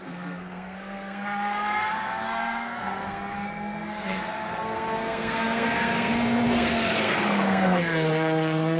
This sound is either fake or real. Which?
fake